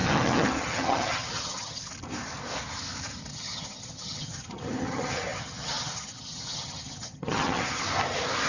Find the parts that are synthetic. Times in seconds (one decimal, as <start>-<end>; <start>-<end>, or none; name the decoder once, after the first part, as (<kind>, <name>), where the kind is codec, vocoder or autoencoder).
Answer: 0.0-1.9 (vocoder, HiFi-GAN); 3.3-7.8